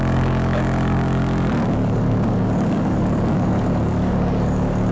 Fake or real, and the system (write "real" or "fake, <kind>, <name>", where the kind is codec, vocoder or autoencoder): fake, codec, DAC